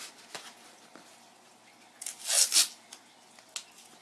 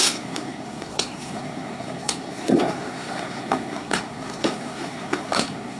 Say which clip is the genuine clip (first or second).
first